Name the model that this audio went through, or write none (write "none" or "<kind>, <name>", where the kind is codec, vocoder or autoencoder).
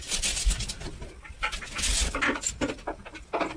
none